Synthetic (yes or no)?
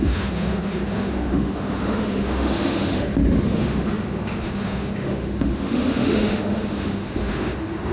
yes